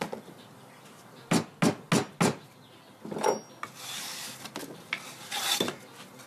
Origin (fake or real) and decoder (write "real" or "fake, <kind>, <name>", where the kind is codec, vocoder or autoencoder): real